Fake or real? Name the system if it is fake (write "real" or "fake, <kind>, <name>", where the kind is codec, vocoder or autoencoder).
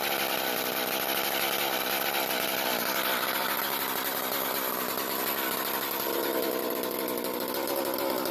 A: real